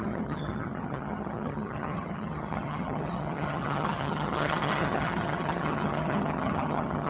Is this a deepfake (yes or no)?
yes